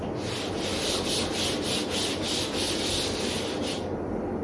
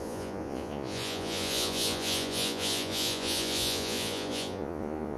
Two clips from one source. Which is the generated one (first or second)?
second